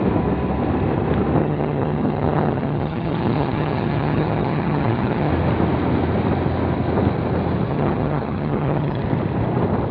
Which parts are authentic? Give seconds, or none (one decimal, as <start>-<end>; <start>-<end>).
0.0-1.4; 5.3-7.7; 9.0-9.9